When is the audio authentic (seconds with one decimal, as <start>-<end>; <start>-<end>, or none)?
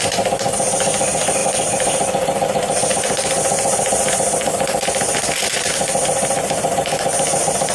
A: 0.0-7.7